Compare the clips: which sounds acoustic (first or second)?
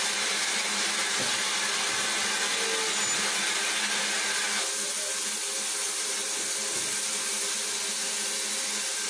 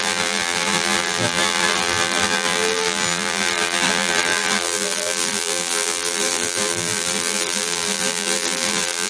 first